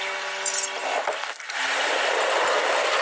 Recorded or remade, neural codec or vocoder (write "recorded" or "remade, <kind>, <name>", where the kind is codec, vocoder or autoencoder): recorded